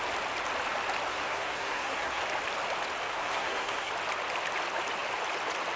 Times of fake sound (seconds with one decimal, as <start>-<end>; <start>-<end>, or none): 1.1-2.2; 3.1-3.9